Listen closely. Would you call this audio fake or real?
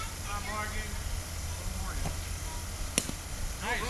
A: real